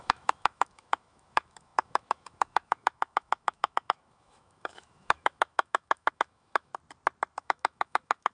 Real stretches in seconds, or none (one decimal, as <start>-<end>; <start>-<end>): 6.7-7.4